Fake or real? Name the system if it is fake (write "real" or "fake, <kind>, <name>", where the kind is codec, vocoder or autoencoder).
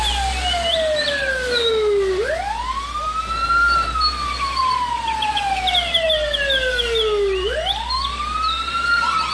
real